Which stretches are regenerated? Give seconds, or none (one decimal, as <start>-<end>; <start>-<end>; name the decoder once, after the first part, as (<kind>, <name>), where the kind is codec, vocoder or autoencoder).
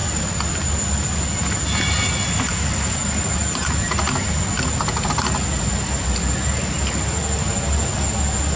none